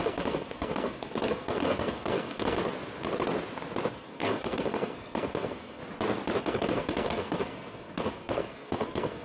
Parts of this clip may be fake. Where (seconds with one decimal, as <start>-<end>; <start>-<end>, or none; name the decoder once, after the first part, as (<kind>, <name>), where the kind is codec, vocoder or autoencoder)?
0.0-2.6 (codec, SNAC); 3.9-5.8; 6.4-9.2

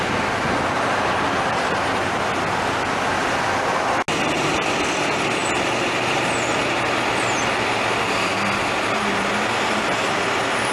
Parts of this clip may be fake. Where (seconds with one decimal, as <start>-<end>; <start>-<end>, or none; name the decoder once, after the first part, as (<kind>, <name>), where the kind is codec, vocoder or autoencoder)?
none

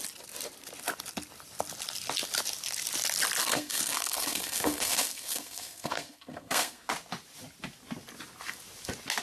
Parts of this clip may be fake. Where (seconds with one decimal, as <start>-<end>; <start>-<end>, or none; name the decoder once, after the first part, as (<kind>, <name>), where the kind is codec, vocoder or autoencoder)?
3.4-6.9 (codec, SNAC)